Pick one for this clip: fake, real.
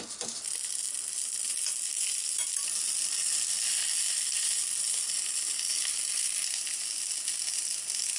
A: real